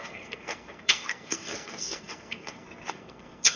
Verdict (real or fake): fake